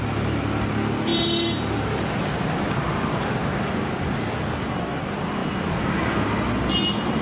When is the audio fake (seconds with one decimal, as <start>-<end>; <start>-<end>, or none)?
none